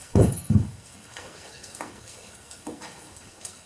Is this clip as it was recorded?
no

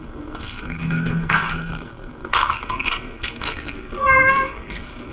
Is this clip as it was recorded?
no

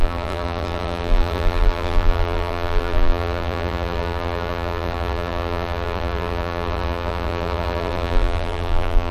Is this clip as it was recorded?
no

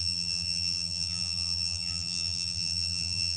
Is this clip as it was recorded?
no